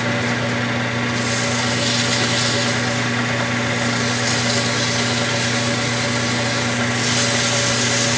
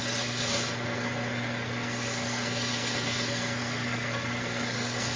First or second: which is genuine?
first